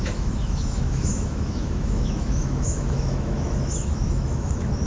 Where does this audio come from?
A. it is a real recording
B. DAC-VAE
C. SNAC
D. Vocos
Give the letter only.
B